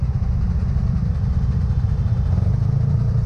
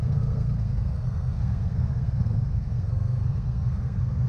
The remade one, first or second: second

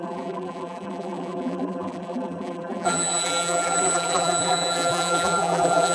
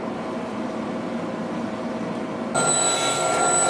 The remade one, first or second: first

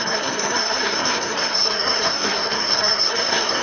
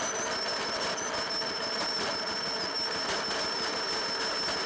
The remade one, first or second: first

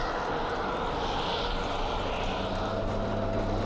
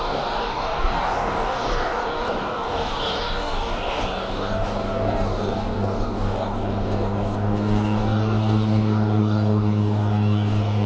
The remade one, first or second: second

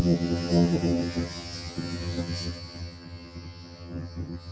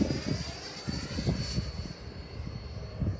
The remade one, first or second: first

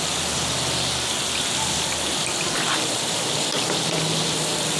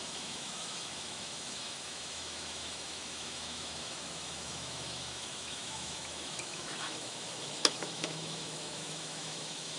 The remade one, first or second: second